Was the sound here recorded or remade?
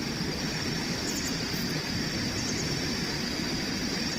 remade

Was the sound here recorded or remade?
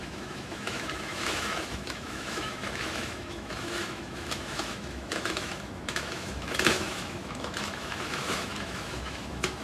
remade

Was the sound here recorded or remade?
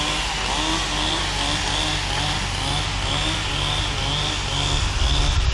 recorded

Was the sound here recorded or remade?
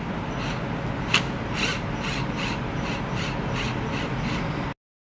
recorded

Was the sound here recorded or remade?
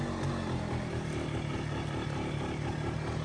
recorded